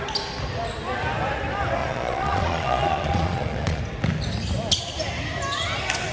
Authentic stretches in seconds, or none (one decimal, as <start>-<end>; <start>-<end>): 0.0-1.8; 3.8-6.1